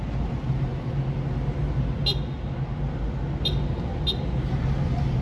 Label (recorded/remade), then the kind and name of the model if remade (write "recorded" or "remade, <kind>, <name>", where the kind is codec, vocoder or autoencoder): recorded